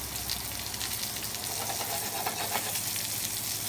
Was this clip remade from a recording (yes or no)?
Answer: no